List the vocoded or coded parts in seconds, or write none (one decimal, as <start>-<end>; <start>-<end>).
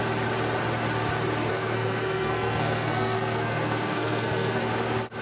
1.5-4.6